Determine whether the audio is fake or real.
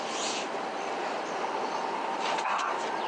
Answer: real